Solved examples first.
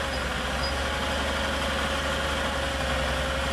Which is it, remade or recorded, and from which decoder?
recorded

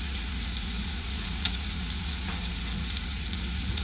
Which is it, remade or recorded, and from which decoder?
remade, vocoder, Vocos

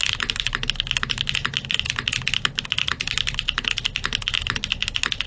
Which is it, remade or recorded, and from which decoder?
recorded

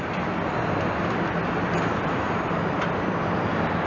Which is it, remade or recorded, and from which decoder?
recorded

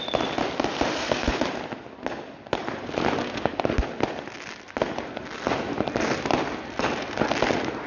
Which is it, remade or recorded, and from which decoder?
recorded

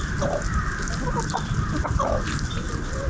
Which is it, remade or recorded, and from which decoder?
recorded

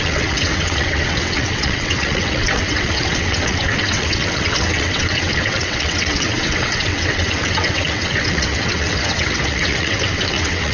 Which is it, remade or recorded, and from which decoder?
remade, vocoder, WaveNeXt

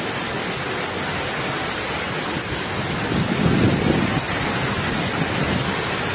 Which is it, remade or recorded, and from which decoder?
recorded